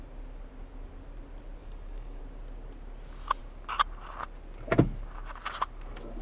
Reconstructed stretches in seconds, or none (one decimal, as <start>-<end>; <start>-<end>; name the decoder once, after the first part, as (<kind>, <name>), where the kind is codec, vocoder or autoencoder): 1.6-2.2 (codec, DAC)